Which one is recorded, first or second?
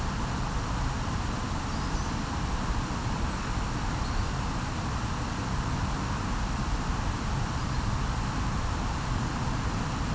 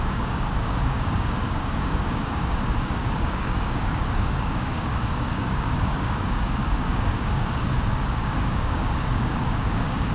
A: first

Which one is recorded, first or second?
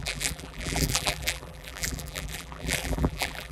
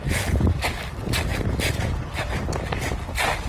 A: second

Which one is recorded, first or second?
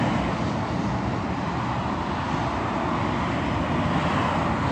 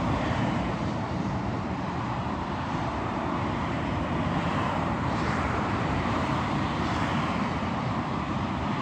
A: first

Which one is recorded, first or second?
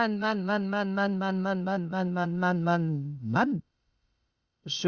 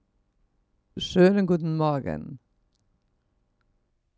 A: second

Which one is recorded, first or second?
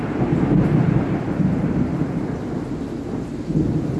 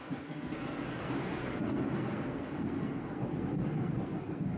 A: first